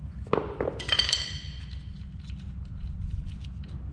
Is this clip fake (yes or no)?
no